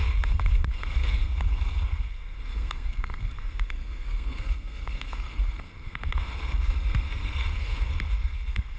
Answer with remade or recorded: remade